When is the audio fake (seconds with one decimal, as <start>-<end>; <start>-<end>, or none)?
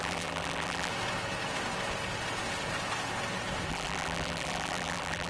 0.0-0.9; 3.7-5.3